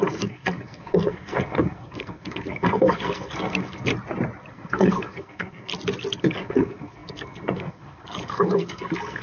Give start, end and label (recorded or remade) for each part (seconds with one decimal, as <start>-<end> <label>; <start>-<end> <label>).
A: 0.0-3.9 remade; 3.9-4.5 recorded; 4.5-5.7 remade; 5.7-6.2 recorded; 6.2-9.2 remade